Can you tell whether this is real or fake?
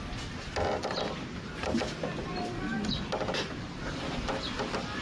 real